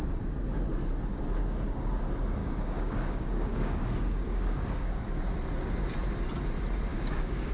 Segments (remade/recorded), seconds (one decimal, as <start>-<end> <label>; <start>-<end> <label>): 0.0-1.4 recorded; 1.4-1.9 remade; 1.9-2.4 recorded; 2.4-5.2 remade; 5.2-6.9 recorded; 6.9-7.5 remade